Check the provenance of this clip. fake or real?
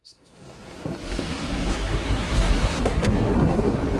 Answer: fake